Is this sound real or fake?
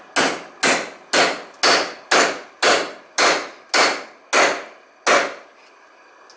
real